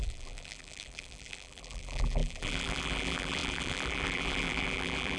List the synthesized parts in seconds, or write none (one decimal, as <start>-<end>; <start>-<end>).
0.0-5.2